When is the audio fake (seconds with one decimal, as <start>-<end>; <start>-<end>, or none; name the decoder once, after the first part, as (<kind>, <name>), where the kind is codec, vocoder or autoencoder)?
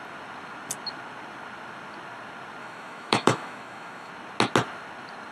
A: 2.6-4.1 (autoencoder, DAC-VAE)